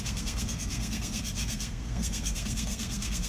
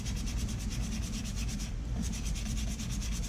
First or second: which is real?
second